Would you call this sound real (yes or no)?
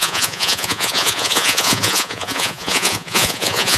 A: no